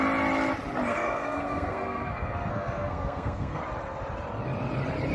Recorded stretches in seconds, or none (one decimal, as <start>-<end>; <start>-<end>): 0.0-0.9; 3.6-5.1